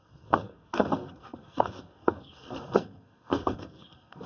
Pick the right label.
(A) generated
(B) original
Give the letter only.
A